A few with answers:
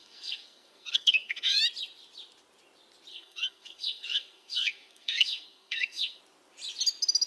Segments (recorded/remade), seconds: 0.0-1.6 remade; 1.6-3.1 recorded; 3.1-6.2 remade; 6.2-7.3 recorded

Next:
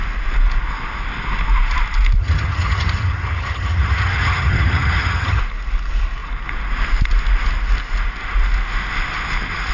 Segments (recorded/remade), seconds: 0.0-2.2 recorded; 2.2-5.4 remade; 5.4-9.7 recorded

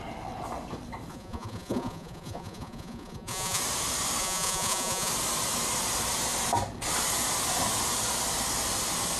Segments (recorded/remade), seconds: 0.0-1.1 recorded; 1.1-3.6 remade; 3.6-4.2 recorded; 4.2-5.1 remade; 5.1-9.2 recorded

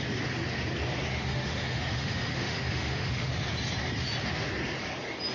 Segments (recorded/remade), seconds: 0.0-1.1 recorded; 1.1-3.3 remade; 3.3-5.3 recorded

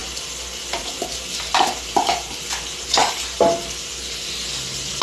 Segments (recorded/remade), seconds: 0.0-0.8 recorded; 0.8-3.0 remade; 3.0-3.6 recorded; 3.6-5.0 remade

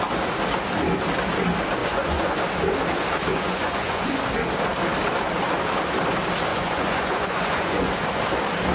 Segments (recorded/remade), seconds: 0.0-1.8 recorded; 1.8-2.4 remade; 2.4-3.3 recorded; 3.3-4.2 remade; 4.2-6.5 recorded; 6.5-7.9 remade; 7.9-8.7 recorded